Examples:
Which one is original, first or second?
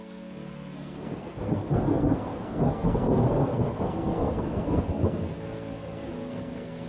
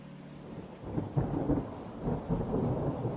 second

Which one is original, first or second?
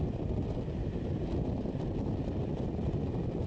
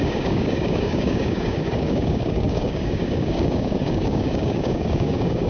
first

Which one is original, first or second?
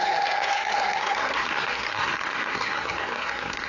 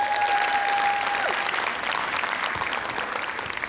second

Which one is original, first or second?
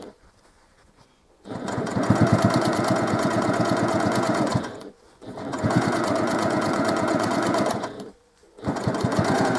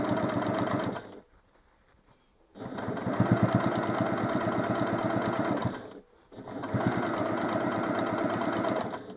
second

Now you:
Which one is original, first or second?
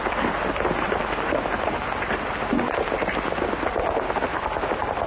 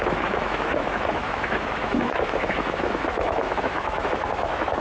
first